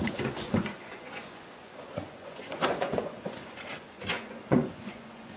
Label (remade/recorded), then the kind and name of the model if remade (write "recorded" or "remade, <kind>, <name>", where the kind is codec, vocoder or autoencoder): remade, vocoder, Vocos